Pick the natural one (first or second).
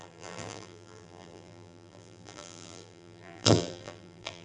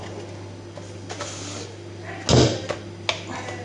second